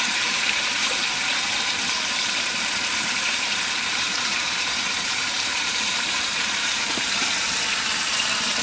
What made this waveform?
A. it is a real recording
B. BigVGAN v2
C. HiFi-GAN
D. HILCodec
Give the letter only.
B